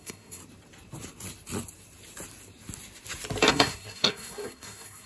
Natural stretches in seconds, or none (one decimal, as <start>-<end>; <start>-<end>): 0.4-3.5

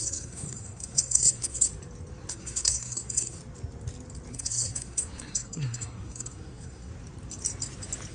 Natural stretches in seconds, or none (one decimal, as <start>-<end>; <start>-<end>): 1.7-2.3; 3.4-4.3; 6.9-8.1

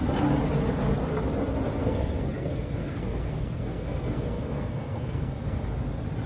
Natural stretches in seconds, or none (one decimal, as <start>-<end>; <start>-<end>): 0.0-1.8; 5.6-6.3

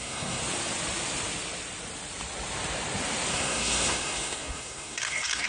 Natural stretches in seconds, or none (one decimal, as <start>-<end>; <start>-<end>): 0.4-3.3

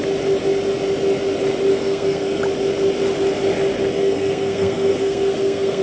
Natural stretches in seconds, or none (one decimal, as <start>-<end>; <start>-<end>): 0.0-1.7; 2.4-4.0